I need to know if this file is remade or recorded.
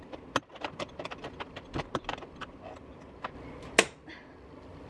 recorded